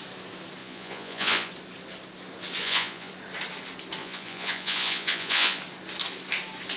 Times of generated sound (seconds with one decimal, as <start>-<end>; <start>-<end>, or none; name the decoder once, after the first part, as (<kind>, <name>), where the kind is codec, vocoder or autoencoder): 0.6-1.5 (vocoder, Vocos); 2.6-3.1; 4.0-5.6